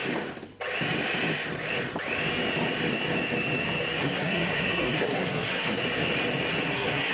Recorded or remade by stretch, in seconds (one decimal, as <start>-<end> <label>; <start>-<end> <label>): 0.0-4.0 recorded; 4.0-5.8 remade; 5.8-6.6 recorded; 6.6-7.1 remade